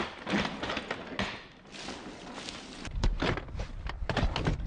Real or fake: real